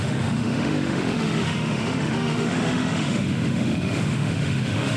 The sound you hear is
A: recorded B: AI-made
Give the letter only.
B